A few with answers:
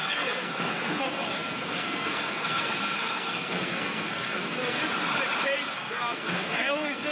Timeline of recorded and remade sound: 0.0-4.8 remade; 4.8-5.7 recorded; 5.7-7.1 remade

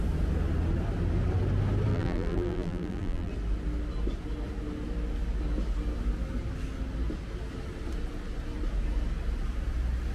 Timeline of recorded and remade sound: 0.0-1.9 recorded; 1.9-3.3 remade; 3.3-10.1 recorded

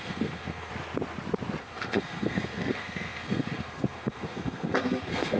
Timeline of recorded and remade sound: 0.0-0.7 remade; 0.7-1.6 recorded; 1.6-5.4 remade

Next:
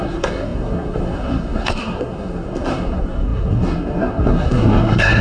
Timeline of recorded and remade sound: 0.0-5.2 remade

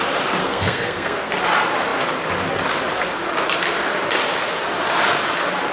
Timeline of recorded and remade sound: 0.0-0.4 recorded; 0.4-1.3 remade; 1.3-5.7 recorded